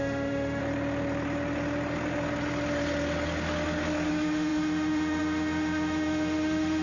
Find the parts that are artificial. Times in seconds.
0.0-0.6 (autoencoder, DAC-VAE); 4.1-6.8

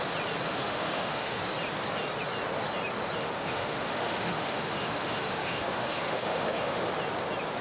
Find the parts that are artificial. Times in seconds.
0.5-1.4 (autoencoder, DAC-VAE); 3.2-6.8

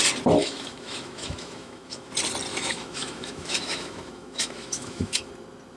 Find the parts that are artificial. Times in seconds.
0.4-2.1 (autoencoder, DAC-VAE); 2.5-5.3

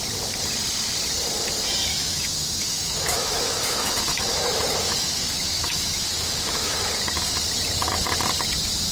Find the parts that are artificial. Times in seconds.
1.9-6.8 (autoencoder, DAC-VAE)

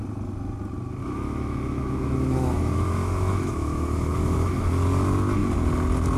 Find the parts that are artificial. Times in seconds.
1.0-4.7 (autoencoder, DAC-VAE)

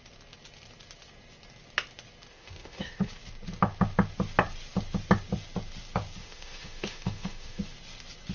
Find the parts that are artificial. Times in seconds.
2.3-3.1 (autoencoder, DAC-VAE); 6.2-7.6

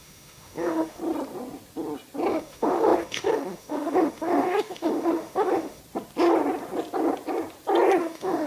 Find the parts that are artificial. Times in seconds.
0.0-1.0 (autoencoder, DAC-VAE); 2.3-5.8; 8.0-8.5